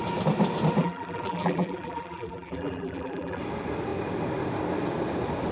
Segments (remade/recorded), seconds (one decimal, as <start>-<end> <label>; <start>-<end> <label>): 0.0-0.8 recorded; 0.8-3.4 remade; 3.4-5.5 recorded